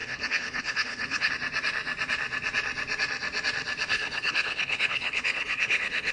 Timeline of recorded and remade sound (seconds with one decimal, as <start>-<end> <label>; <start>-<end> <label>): 0.0-1.3 remade; 1.3-3.9 recorded; 3.9-6.1 remade